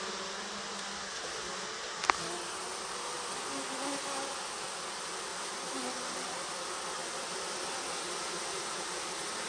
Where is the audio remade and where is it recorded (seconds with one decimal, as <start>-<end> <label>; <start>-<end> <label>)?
0.0-9.5 recorded